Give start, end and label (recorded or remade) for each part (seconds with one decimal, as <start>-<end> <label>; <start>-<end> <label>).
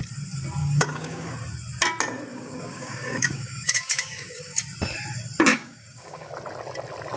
0.0-0.6 recorded; 0.6-1.3 remade; 1.3-2.3 recorded; 2.3-4.6 remade; 4.6-5.5 recorded; 5.5-6.3 remade; 6.3-7.2 recorded